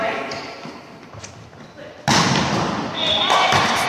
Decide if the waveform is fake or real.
real